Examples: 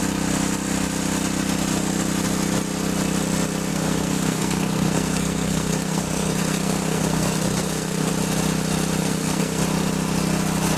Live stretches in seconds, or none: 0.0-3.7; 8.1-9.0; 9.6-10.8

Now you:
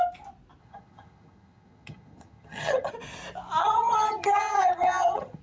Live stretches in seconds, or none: 0.0-0.6; 2.9-3.6

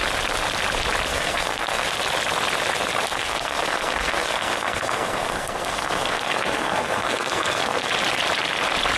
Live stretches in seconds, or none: 0.0-1.1; 1.9-3.1; 7.9-9.0

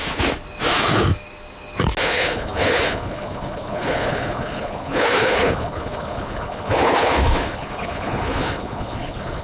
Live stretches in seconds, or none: 0.0-2.0

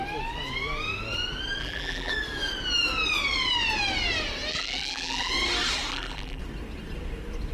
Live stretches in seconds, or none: 0.0-1.6; 2.1-4.5; 5.3-5.9; 6.4-7.5